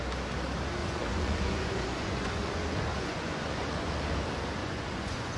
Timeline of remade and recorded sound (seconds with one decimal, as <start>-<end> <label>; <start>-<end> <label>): 0.0-0.8 recorded; 0.8-4.0 remade; 4.0-4.6 recorded; 4.6-5.4 remade